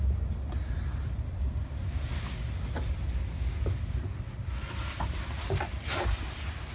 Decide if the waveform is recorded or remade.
recorded